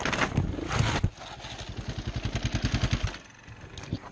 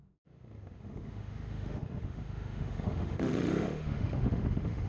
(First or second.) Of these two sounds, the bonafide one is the first